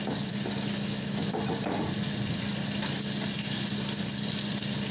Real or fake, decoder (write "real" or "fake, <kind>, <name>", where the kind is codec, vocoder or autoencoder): real